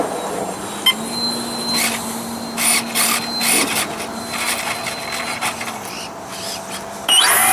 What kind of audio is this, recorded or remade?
recorded